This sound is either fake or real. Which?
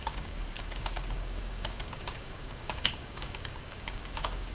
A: fake